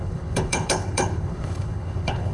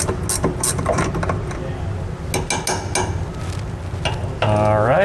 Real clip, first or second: second